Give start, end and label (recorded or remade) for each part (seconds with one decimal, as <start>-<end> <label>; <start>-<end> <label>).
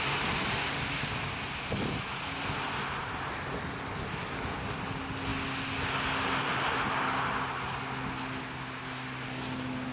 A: 0.0-9.9 recorded